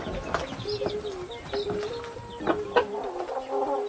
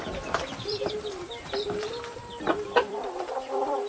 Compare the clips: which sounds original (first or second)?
first